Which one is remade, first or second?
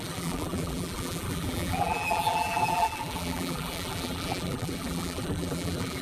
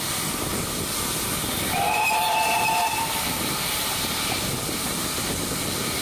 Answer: first